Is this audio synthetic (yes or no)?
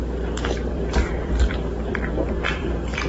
yes